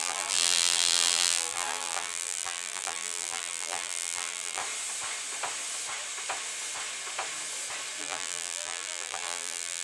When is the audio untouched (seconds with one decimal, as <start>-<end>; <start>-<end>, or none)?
4.6-8.0